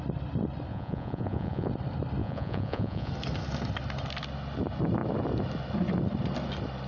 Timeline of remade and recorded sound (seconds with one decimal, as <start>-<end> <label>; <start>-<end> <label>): 0.0-0.7 recorded; 0.7-1.7 remade; 1.7-2.2 recorded; 2.2-3.1 remade; 3.1-6.9 recorded